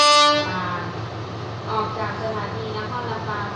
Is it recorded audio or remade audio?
recorded